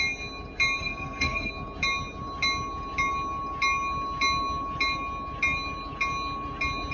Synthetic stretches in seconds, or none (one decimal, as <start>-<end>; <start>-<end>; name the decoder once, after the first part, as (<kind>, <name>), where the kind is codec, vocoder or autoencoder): 0.8-1.5 (codec, SNAC)